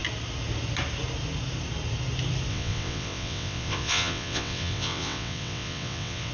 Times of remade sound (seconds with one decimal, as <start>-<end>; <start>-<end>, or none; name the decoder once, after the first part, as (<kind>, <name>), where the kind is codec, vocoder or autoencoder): 2.5-6.3 (vocoder, WaveNeXt)